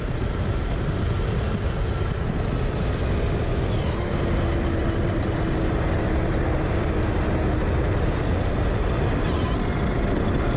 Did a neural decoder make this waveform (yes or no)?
no